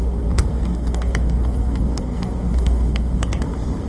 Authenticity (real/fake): fake